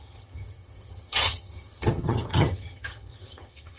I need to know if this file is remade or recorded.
remade